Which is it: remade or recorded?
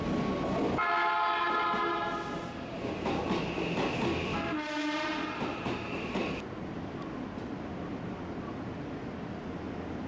recorded